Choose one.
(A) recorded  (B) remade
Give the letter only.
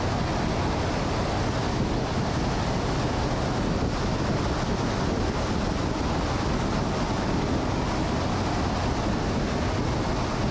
A